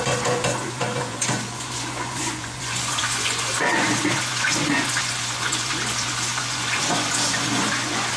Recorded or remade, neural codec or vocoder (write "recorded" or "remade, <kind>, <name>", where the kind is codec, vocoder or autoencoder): remade, vocoder, Vocos